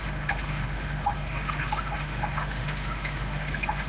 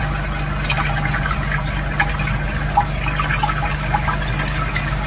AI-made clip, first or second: first